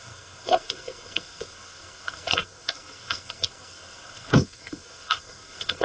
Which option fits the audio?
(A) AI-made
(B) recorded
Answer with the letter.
A